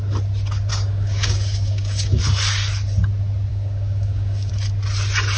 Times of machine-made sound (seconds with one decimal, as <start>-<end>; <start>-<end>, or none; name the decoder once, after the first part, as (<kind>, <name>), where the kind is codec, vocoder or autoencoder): 0.7-2.2 (codec, DAC); 3.5-4.5